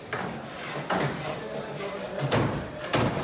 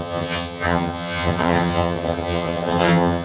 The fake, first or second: second